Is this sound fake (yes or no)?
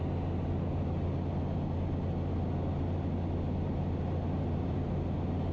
no